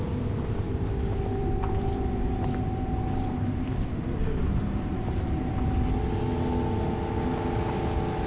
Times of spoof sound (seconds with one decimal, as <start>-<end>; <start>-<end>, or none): none